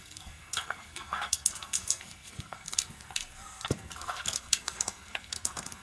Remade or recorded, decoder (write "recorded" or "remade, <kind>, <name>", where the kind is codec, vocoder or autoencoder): remade, codec, SNAC